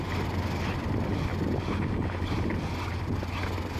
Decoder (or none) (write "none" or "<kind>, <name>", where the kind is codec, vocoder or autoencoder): none